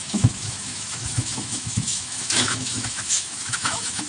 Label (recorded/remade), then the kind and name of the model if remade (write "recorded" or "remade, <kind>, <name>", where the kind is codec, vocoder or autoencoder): remade, autoencoder, DAC-VAE